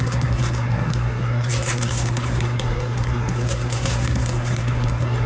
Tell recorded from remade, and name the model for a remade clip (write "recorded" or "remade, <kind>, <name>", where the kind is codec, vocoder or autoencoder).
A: remade, codec, SNAC